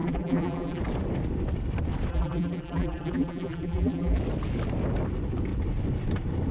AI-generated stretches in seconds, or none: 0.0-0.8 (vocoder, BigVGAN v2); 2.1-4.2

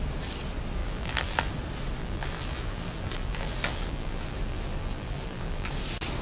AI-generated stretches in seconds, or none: 0.8-1.5 (vocoder, BigVGAN v2); 2.0-5.7